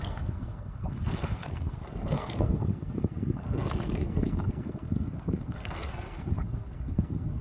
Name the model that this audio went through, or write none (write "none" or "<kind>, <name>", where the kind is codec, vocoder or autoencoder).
codec, SNAC